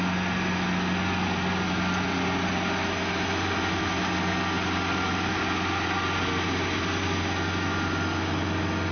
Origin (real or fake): real